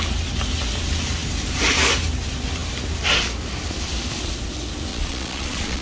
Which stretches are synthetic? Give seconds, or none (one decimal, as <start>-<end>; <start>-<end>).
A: 4.9-5.8